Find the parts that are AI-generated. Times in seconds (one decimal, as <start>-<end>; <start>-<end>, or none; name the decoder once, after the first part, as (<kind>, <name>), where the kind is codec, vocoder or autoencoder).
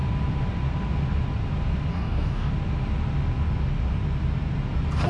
1.9-2.5 (codec, DAC)